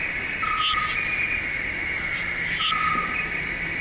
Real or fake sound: real